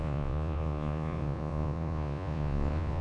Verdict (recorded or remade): remade